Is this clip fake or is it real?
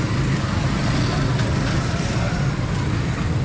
real